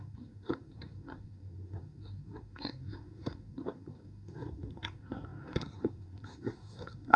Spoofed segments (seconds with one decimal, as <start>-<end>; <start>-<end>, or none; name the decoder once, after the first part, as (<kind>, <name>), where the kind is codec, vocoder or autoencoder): 0.0-7.2 (codec, SNAC)